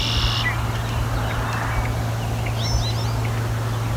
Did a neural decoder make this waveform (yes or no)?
no